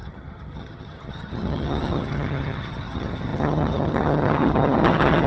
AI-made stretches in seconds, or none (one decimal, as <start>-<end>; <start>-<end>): 0.0-5.3